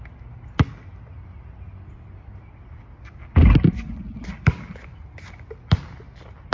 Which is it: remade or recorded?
recorded